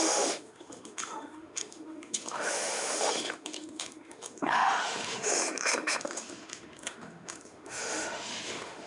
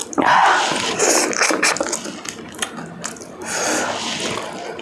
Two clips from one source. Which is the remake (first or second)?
first